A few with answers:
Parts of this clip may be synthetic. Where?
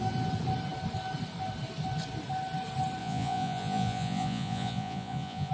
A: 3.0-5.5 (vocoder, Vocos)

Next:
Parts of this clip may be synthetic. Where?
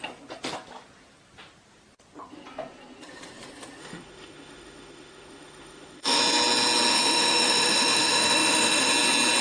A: 3.8-6.2 (autoencoder, DAC-VAE); 6.9-8.9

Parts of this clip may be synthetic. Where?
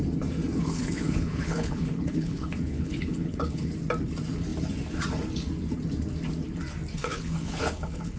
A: 0.6-3.7 (codec, HILCodec); 7.0-8.2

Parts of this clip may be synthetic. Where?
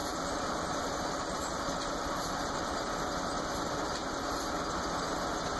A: 0.0-2.9 (vocoder, BigVGAN v2)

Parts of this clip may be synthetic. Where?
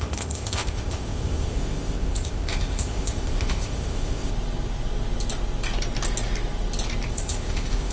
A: 0.0-4.3 (codec, ZipCodec); 7.1-7.9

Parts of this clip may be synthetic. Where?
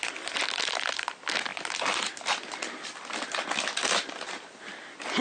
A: none